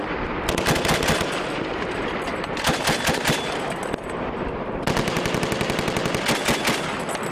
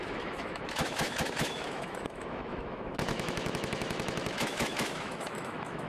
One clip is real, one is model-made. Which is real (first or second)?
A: first